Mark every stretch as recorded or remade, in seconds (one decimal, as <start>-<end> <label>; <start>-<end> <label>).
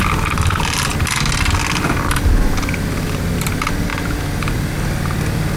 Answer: 0.0-5.6 recorded